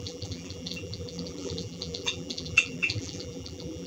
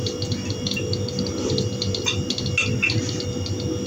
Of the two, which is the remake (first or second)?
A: first